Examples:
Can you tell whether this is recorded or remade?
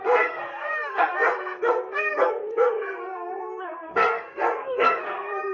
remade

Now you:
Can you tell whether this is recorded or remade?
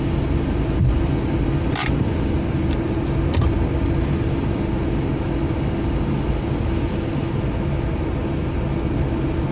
recorded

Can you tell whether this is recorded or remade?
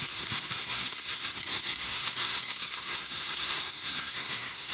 remade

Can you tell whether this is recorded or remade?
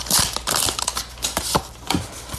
recorded